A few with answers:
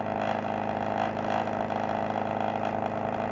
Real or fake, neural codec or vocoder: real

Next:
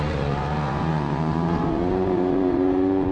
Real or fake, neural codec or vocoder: fake, vocoder, Vocos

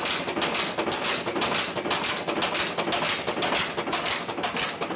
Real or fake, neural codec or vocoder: real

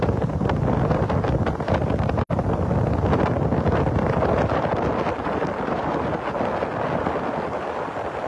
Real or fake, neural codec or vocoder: real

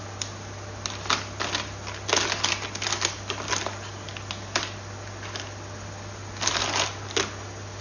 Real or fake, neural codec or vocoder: real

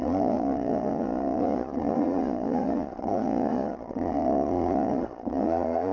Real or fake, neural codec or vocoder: fake, vocoder, Vocos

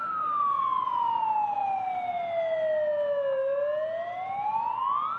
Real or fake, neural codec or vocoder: real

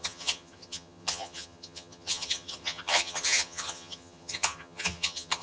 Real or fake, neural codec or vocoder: fake, vocoder, HiFi-GAN